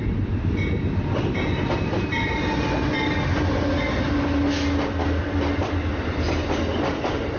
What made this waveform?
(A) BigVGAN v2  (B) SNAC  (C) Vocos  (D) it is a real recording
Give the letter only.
D